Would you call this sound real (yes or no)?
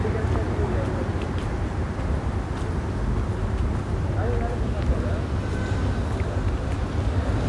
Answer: yes